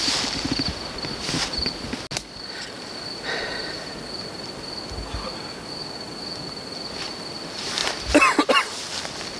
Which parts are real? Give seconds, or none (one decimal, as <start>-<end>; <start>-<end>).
0.0-7.8; 8.5-9.4